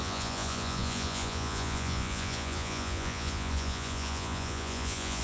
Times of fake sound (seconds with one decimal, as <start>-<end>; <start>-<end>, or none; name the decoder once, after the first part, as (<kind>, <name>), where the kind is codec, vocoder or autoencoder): 0.0-5.2 (vocoder, Vocos)